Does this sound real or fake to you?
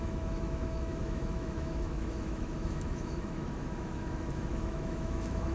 fake